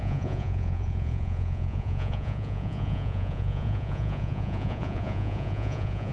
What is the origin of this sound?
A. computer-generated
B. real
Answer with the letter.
A